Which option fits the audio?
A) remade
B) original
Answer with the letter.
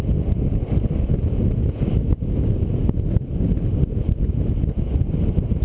B